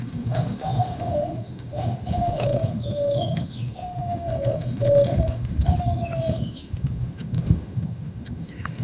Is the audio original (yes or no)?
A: no